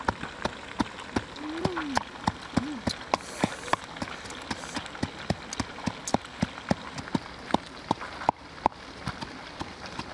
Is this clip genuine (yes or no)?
yes